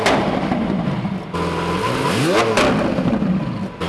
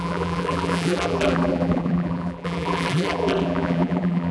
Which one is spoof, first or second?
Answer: second